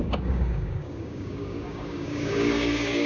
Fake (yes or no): yes